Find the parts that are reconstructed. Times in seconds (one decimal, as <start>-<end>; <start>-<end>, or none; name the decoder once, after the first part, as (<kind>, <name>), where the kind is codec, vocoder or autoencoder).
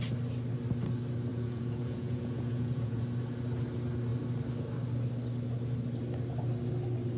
1.3-3.0 (vocoder, Vocos)